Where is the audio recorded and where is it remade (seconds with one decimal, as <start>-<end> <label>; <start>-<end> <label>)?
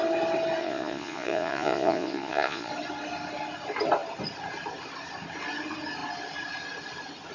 0.0-0.6 recorded; 0.6-2.7 remade; 2.7-7.3 recorded